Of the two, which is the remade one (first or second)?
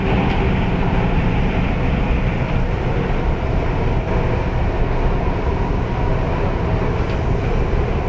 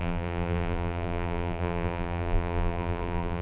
second